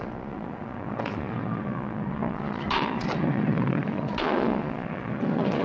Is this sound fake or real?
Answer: fake